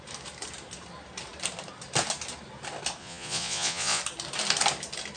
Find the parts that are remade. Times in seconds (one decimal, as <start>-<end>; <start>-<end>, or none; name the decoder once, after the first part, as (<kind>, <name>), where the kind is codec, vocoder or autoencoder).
3.0-4.0 (vocoder, Vocos)

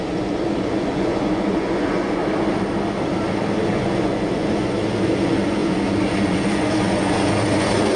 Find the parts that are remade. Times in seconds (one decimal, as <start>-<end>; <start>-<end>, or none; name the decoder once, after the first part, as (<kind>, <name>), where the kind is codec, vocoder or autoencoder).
0.0-2.2 (vocoder, Vocos); 3.7-8.0

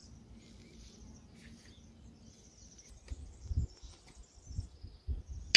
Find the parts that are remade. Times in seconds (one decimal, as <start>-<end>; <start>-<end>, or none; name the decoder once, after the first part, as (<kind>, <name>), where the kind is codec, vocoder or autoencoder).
none

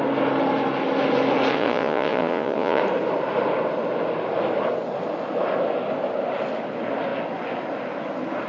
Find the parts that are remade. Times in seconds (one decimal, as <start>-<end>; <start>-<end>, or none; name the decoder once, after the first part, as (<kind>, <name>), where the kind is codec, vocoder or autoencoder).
1.5-2.8 (vocoder, Vocos)

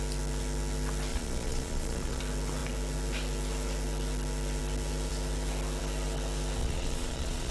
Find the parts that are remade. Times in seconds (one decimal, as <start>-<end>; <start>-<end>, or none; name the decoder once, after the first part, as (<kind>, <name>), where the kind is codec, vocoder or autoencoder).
1.1-2.2 (vocoder, Vocos); 6.6-7.5

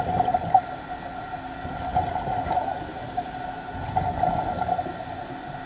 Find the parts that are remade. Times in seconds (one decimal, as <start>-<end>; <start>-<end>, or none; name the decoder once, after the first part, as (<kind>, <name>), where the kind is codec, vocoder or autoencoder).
none